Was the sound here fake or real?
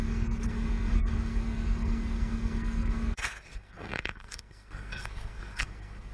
fake